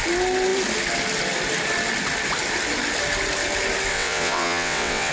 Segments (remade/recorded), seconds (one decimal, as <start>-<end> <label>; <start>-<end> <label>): 0.0-3.9 recorded; 3.9-5.1 remade